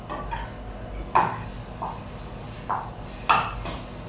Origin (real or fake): real